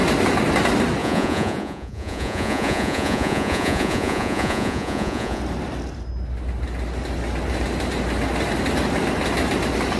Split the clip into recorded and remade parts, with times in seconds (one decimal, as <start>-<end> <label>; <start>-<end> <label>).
0.0-1.0 recorded; 1.0-5.4 remade; 5.4-10.0 recorded